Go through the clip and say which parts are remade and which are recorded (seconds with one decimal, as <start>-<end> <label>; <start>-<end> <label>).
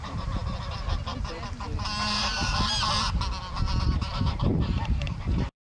0.0-0.4 remade; 0.4-3.8 recorded; 3.8-5.7 remade